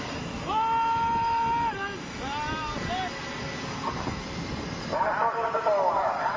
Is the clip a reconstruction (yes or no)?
no